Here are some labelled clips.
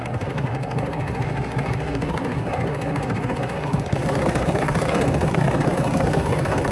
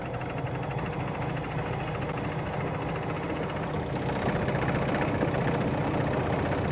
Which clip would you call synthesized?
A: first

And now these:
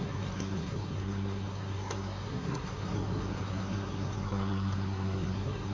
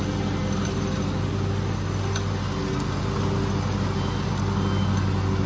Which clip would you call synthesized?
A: first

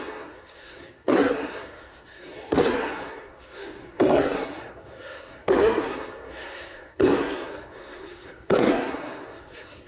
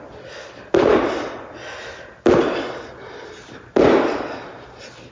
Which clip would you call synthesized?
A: first